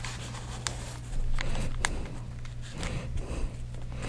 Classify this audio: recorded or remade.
recorded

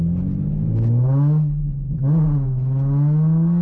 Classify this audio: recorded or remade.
recorded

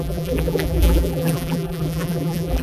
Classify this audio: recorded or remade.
remade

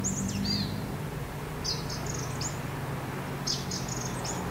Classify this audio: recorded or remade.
recorded